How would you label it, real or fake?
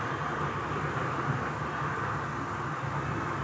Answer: real